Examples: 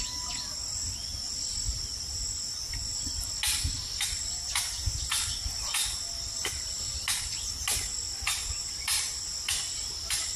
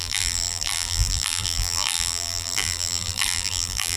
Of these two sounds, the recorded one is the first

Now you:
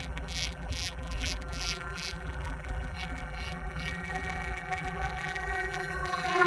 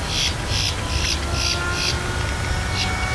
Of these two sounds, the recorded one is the second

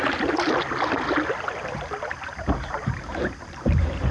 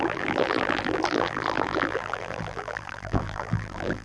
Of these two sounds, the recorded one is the first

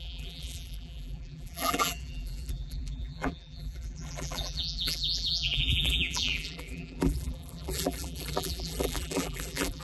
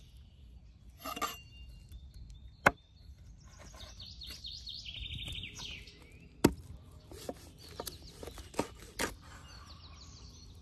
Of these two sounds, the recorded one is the second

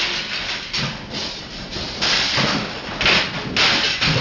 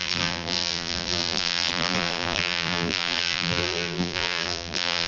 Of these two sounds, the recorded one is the first